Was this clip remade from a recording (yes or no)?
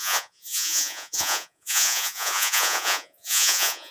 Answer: yes